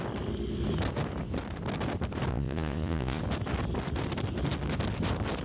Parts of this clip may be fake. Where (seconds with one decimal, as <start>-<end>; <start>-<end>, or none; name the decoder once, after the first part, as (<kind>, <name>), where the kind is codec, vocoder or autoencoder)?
2.3-3.2 (vocoder, Vocos)

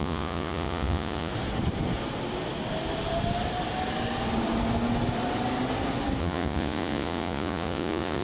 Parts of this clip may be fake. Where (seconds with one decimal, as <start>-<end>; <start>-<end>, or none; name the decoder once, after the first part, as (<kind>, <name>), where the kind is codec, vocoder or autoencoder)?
0.0-1.3 (vocoder, Vocos); 6.2-8.2

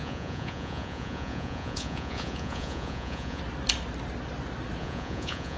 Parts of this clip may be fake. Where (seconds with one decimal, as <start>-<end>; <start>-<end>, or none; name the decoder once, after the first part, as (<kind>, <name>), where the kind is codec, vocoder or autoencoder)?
0.0-3.4 (vocoder, Vocos); 4.8-5.6

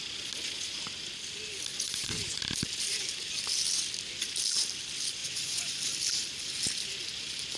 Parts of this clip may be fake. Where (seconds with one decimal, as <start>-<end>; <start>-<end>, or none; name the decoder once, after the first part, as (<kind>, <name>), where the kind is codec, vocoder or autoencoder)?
1.7-2.4 (vocoder, Vocos); 5.2-5.8

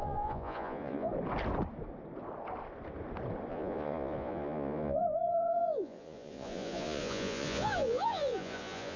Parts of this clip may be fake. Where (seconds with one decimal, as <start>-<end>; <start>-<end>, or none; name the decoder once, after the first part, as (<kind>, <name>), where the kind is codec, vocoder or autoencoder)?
0.0-1.1 (vocoder, Vocos); 3.5-9.0

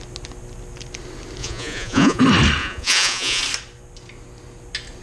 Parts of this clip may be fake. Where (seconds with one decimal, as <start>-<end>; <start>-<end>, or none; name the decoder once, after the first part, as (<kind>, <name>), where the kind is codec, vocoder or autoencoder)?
1.4-2.2 (vocoder, Vocos); 2.6-3.4